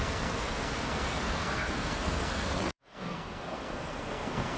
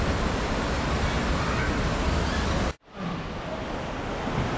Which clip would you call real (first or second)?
second